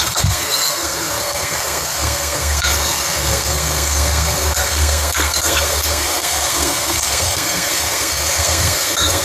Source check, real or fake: fake